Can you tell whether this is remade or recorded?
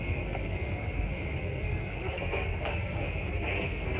remade